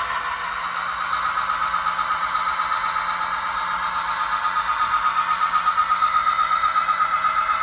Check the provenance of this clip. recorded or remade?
recorded